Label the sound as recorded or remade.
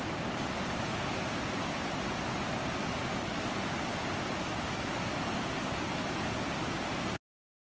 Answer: recorded